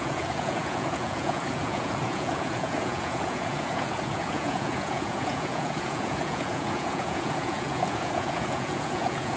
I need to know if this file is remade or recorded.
remade